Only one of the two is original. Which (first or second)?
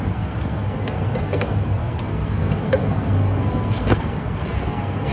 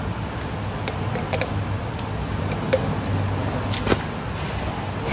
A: second